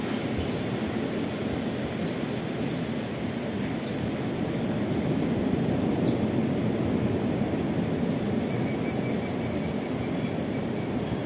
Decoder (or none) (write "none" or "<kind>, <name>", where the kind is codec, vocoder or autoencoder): none